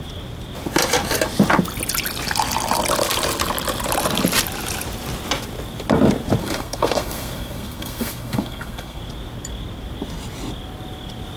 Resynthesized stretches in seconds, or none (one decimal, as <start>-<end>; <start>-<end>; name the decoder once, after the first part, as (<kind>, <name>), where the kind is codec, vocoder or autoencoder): 6.4-9.0 (codec, SNAC)